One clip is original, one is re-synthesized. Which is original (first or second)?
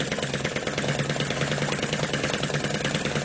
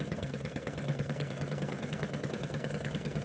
first